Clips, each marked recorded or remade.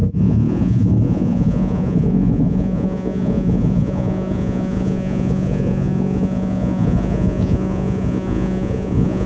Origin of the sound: remade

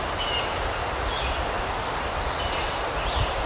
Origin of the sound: recorded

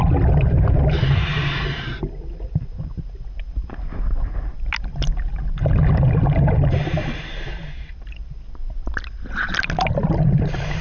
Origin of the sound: recorded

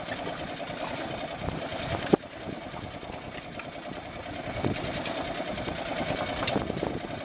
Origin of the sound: recorded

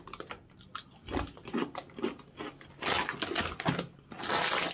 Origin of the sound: recorded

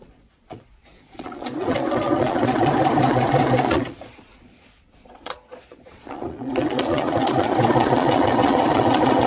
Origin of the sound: remade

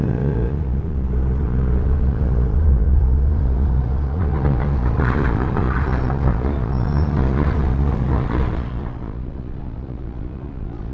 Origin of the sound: remade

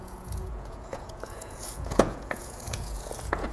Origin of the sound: remade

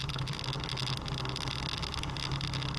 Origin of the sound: recorded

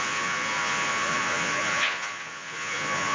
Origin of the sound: remade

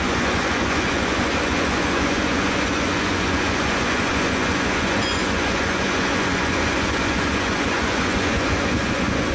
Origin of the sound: remade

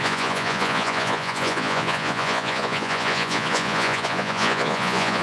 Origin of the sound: remade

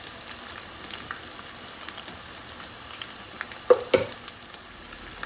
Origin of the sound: recorded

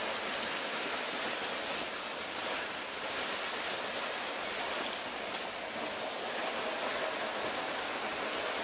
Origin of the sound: recorded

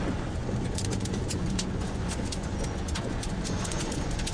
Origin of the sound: remade